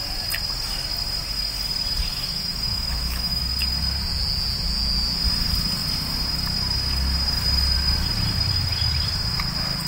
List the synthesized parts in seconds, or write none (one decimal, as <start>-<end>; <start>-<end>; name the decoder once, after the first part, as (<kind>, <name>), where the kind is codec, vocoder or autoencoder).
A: 2.1-3.4 (autoencoder, DAC-VAE)